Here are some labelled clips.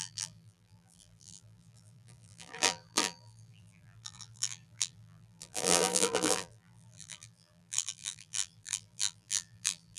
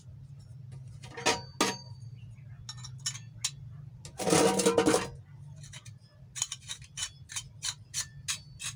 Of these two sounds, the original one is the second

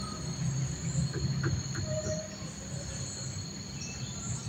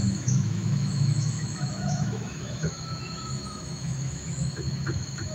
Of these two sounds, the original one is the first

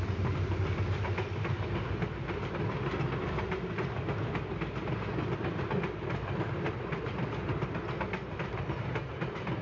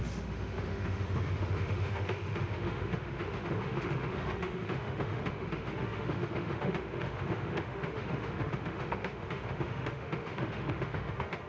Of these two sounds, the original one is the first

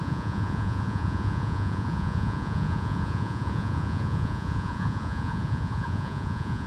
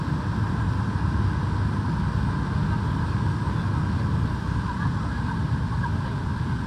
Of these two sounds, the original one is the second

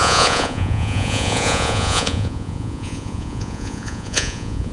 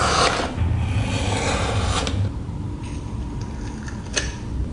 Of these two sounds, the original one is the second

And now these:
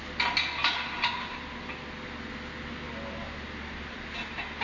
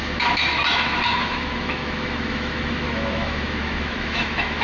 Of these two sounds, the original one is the first